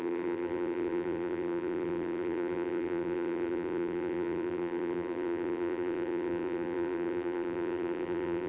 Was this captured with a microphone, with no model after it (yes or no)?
no